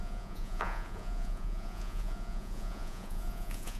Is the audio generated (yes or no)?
yes